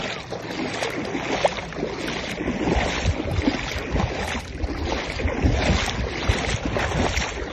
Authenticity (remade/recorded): recorded